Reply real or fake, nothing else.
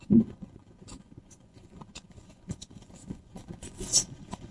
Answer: fake